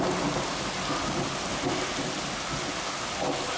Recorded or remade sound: recorded